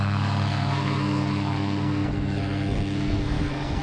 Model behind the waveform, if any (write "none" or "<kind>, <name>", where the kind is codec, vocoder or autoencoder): codec, SNAC